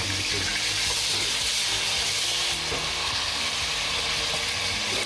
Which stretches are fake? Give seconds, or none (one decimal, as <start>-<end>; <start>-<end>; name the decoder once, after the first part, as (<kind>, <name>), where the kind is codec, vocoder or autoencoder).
2.8-3.5 (codec, SNAC)